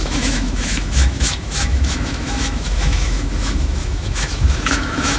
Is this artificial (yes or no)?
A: yes